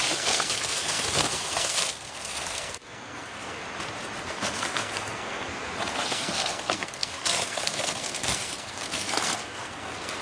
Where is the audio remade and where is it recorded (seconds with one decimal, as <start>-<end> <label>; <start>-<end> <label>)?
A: 0.0-3.6 remade; 3.6-4.2 recorded; 4.2-10.2 remade